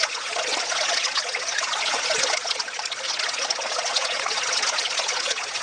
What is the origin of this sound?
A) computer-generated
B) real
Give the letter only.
A